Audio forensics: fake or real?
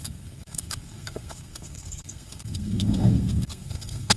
fake